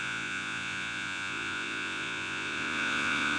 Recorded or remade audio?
remade